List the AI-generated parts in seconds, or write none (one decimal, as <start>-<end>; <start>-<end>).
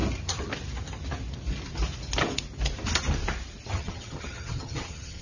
3.7-5.2